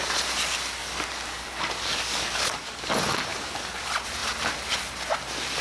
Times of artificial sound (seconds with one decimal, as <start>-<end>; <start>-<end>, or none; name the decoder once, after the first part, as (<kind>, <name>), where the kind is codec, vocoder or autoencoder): 0.8-2.8 (codec, DAC); 3.3-3.8